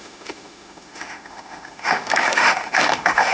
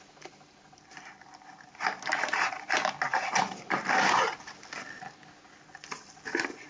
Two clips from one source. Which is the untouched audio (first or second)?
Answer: second